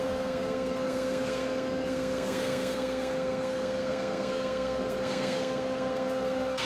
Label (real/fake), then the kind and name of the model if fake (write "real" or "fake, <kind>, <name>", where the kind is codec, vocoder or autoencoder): fake, codec, SNAC